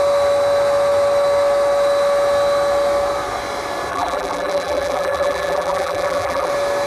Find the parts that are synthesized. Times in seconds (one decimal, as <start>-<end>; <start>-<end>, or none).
3.9-6.5